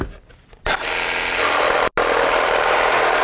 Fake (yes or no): no